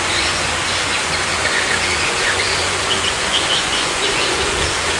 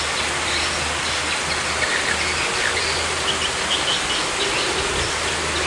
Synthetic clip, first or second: first